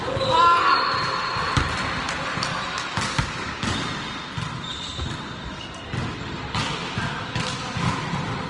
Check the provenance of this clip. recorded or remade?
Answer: recorded